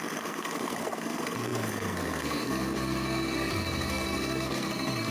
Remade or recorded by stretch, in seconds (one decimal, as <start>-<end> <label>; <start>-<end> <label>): 0.0-5.1 remade